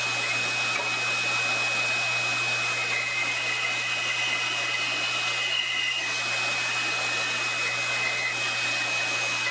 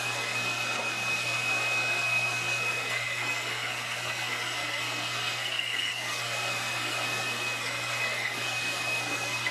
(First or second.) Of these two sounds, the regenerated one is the second